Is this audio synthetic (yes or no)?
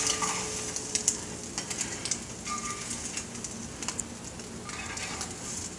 no